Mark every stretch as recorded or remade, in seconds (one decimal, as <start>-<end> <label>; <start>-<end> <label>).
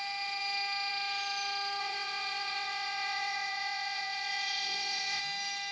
0.0-1.8 recorded; 1.8-5.2 remade; 5.2-5.7 recorded